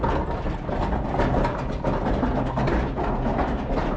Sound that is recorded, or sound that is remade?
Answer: recorded